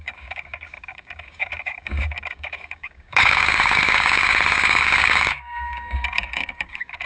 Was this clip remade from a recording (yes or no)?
yes